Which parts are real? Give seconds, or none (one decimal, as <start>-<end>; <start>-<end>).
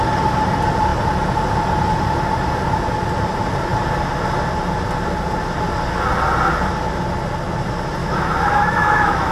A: 0.0-8.0